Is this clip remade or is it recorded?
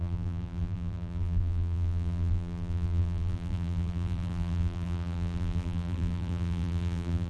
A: remade